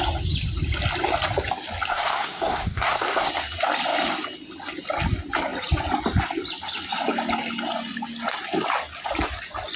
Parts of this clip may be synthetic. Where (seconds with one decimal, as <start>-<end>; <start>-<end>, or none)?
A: 1.9-3.3